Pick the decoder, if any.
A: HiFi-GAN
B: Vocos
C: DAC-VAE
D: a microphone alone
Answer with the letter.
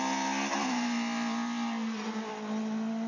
D